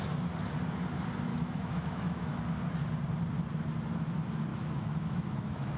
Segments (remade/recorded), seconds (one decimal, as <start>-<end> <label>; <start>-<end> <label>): 0.0-1.3 recorded; 1.3-2.4 remade; 2.4-4.5 recorded; 4.5-5.8 remade

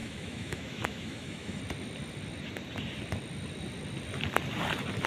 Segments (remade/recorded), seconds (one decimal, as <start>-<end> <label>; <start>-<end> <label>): 0.0-1.6 remade; 1.6-5.1 recorded

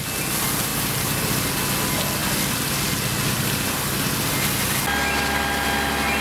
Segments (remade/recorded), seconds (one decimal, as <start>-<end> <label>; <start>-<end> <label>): 0.0-6.2 recorded

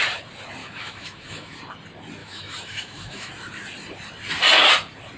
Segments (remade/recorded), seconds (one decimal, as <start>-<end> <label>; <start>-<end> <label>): 0.0-0.6 recorded; 0.6-1.6 remade; 1.6-2.2 recorded; 2.2-3.3 remade; 3.3-5.2 recorded

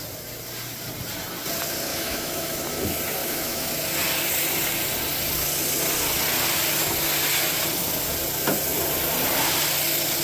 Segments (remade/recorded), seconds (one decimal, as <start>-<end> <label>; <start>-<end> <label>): 0.0-1.9 recorded; 1.9-2.8 remade; 2.8-3.2 recorded; 3.2-3.7 remade; 3.7-10.2 recorded